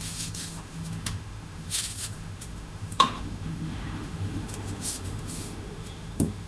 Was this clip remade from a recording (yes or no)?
yes